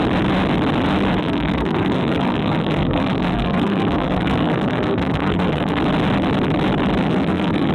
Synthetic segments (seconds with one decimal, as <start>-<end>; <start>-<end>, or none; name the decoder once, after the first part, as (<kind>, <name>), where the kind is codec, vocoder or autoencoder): 1.2-5.8 (codec, SNAC); 7.0-7.7